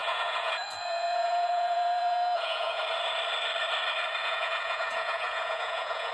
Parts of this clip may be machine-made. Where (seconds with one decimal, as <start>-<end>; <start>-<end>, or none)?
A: 0.0-2.8; 4.2-6.1